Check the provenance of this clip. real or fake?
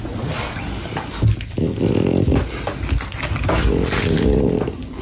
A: real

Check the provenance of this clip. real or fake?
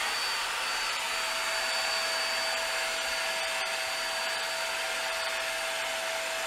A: real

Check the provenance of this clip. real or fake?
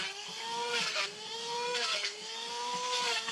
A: fake